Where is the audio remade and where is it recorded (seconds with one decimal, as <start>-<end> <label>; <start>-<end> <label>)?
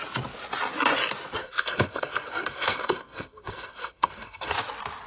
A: 0.0-1.4 recorded; 1.4-4.5 remade; 4.5-5.1 recorded